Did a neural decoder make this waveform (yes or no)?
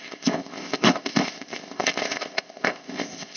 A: yes